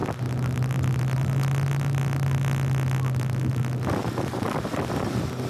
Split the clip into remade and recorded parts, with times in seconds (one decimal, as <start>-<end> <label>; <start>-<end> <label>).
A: 0.0-5.5 recorded